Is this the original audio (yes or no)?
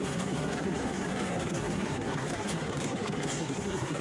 no